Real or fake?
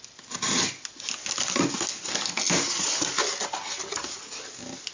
real